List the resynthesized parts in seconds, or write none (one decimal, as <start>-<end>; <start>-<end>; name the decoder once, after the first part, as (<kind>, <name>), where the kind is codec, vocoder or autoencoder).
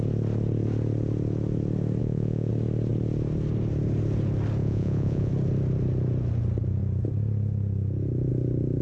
2.0-2.5 (vocoder, Vocos); 4.6-5.3